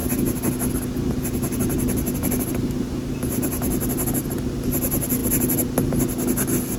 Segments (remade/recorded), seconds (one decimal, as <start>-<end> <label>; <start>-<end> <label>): 0.0-6.8 recorded